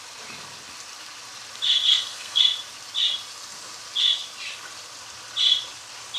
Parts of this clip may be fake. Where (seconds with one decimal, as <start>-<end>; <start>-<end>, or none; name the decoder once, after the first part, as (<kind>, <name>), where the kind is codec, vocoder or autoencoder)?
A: 1.9-2.4 (codec, SNAC)